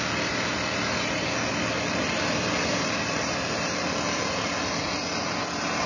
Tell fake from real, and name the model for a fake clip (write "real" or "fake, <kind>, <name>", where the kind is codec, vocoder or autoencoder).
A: real